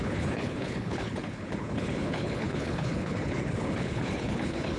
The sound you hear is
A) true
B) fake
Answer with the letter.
B